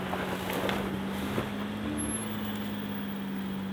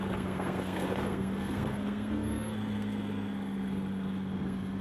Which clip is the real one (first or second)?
first